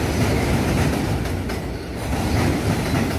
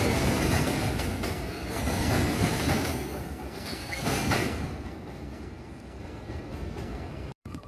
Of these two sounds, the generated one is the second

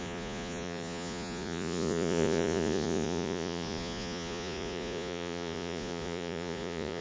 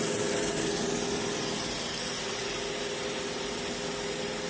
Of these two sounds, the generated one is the first